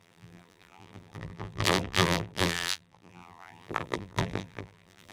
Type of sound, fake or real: fake